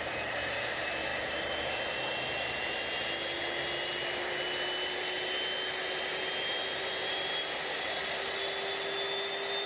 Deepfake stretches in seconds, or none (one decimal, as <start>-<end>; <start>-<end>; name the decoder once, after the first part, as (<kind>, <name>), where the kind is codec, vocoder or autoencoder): none